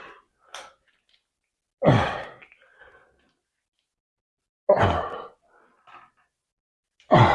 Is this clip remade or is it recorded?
recorded